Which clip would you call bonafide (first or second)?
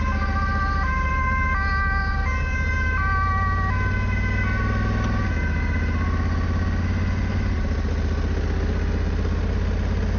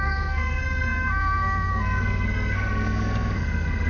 first